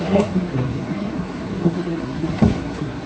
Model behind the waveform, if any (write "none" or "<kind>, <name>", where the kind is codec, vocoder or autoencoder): codec, SNAC